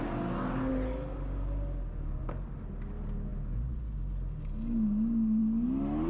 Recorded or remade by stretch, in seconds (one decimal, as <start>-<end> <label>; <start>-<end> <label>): 0.0-6.1 recorded